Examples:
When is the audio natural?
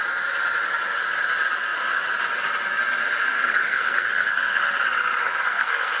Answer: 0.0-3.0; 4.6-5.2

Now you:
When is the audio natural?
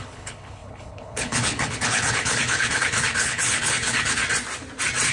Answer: 4.2-5.1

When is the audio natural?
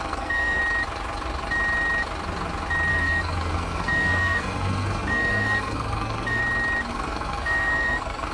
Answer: 0.6-2.9; 6.4-6.9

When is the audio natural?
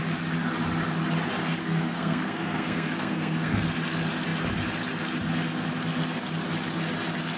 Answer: 0.0-1.6; 3.6-7.4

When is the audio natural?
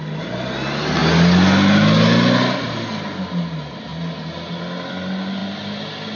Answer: 0.0-6.2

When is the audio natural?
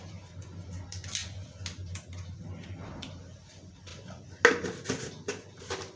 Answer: 0.0-6.0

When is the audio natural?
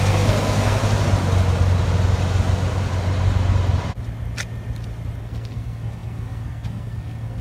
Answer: 0.8-5.2